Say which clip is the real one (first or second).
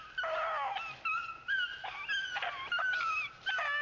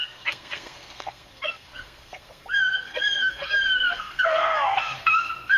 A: first